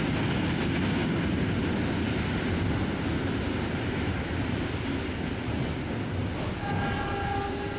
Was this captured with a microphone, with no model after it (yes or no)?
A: yes